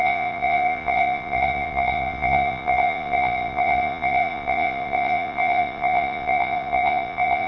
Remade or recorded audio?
remade